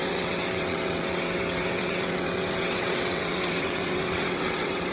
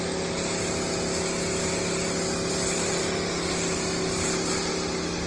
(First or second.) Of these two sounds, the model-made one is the first